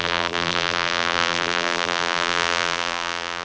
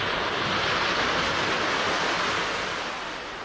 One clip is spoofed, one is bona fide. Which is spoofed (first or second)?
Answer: first